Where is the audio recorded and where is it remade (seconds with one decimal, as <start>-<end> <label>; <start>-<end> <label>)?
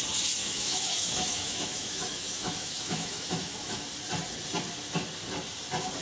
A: 0.0-0.4 recorded; 0.4-3.8 remade; 3.8-6.0 recorded